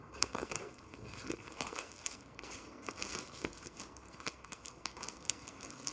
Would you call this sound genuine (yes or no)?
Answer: no